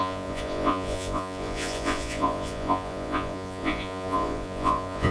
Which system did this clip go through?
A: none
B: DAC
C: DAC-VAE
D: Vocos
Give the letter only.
D